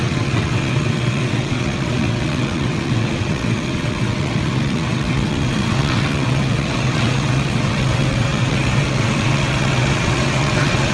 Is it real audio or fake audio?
fake